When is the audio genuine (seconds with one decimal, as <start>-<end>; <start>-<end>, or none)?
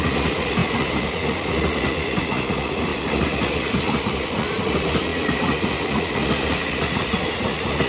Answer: none